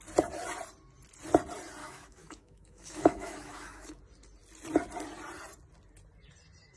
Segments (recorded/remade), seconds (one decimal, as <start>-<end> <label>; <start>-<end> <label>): 0.0-1.8 recorded; 1.8-4.0 remade; 4.0-6.8 recorded